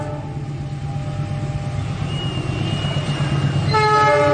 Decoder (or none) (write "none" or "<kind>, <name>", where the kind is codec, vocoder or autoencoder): none